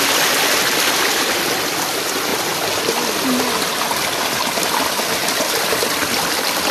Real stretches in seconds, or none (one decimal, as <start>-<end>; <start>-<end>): 0.0-6.7